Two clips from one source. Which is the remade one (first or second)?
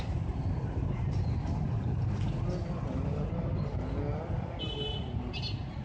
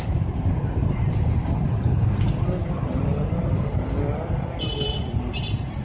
second